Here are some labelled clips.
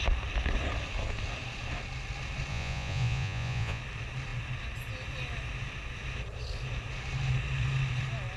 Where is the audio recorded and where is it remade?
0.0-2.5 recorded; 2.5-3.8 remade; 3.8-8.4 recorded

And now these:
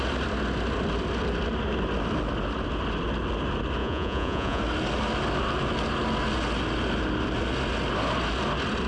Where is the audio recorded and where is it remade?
0.0-3.8 recorded; 3.8-4.6 remade; 4.6-8.9 recorded

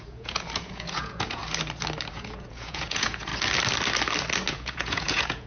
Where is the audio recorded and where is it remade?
0.0-1.4 remade; 1.4-2.1 recorded; 2.1-3.3 remade; 3.3-4.5 recorded; 4.5-5.5 remade

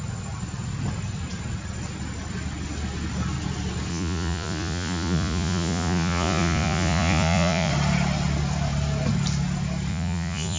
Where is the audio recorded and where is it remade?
0.0-3.9 recorded; 3.9-7.7 remade; 7.7-9.9 recorded; 9.9-10.6 remade